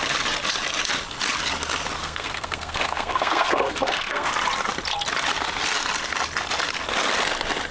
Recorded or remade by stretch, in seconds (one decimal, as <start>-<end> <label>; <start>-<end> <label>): 0.0-2.0 recorded; 2.0-4.3 remade; 4.3-7.7 recorded